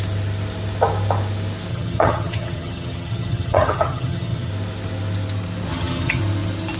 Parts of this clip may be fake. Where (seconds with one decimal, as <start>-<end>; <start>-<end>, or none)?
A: 1.7-4.5; 5.7-6.2